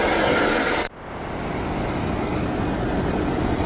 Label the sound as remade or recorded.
recorded